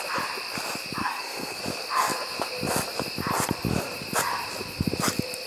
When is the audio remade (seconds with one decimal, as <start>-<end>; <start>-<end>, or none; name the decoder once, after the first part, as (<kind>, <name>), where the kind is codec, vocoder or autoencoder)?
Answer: 1.0-1.6 (codec, SNAC)